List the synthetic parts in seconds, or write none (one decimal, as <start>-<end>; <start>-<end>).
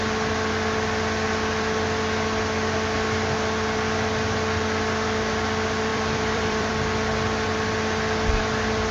5.9-6.7